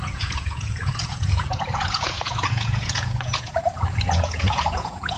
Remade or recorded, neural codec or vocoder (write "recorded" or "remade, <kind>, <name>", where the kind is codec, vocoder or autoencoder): remade, vocoder, Vocos